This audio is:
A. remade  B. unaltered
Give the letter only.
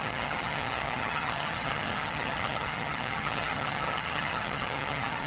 A